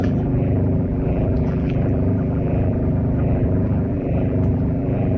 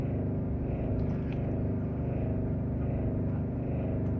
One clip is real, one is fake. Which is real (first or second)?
second